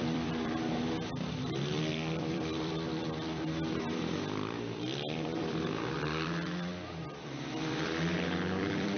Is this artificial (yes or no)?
yes